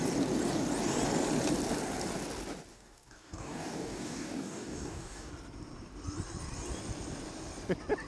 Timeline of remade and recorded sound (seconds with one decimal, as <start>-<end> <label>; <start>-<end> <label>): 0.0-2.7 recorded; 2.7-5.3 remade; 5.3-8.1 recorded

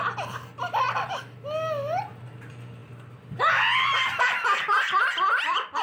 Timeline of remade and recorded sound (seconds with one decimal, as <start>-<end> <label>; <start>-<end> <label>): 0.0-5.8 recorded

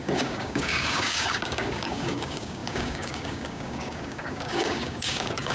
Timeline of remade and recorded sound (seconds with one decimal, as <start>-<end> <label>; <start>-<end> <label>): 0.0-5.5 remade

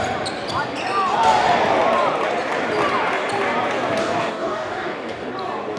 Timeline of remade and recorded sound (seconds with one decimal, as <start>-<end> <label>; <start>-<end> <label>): 0.0-4.0 recorded; 4.0-5.3 remade; 5.3-5.8 recorded

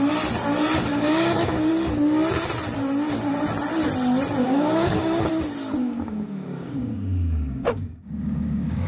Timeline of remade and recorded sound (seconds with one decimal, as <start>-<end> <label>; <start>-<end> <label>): 0.0-0.9 recorded; 0.9-1.7 remade; 1.7-4.4 recorded; 4.4-5.3 remade; 5.3-5.8 recorded; 5.8-8.9 remade

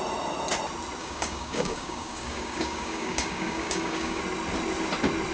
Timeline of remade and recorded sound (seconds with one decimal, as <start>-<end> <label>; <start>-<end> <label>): 0.0-1.0 recorded; 1.0-4.2 remade; 4.2-5.3 recorded

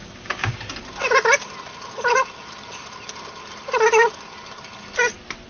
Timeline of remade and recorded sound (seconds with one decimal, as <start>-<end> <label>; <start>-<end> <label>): 0.0-0.5 remade; 0.5-5.5 recorded